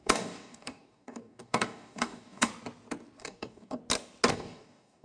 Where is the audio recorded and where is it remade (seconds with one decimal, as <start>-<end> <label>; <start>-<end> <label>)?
0.0-2.5 remade; 2.5-3.2 recorded; 3.2-3.8 remade; 3.8-4.3 recorded; 4.3-5.0 remade